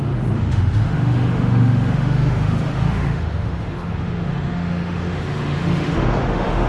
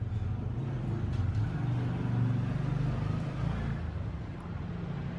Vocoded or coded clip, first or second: first